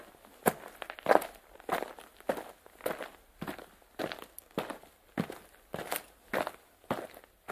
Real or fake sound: real